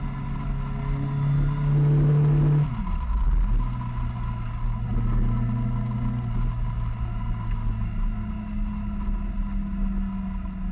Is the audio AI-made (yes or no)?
no